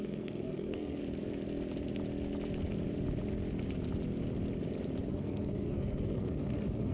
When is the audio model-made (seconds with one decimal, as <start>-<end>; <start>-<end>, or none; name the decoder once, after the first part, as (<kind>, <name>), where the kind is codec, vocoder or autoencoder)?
0.0-1.0 (codec, SNAC); 5.1-6.9